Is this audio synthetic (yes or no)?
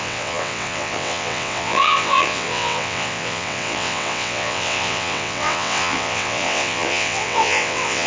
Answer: yes